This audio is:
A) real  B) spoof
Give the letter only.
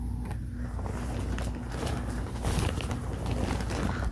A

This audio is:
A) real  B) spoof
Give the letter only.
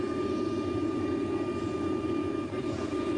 A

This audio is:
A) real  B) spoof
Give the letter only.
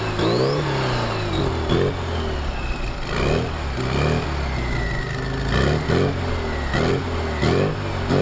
A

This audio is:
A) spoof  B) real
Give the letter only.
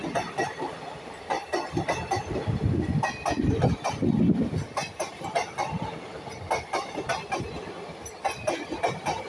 B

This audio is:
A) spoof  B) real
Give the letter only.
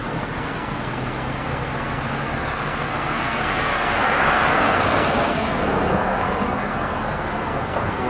A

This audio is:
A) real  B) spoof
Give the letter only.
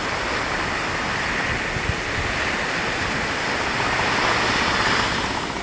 A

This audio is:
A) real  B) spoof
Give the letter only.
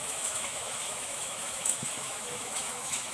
B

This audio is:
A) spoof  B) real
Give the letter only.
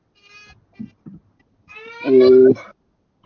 B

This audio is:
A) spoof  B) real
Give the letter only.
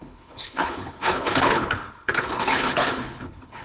A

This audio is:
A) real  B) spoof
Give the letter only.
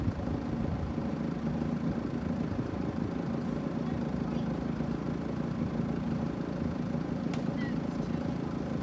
A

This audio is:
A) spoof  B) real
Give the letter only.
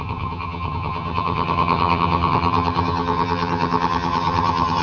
A